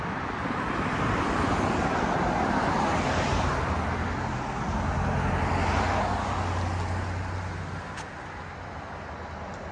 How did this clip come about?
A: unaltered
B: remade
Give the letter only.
A